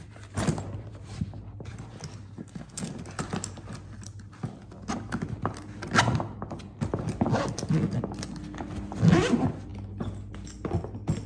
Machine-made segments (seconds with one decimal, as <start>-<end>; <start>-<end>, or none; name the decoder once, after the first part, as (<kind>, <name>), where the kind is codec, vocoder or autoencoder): 2.4-2.9 (codec, SNAC)